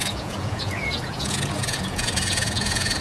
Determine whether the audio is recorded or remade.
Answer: remade